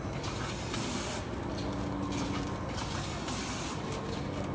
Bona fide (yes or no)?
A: yes